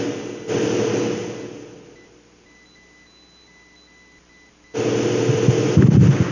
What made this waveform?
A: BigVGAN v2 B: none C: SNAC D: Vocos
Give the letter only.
B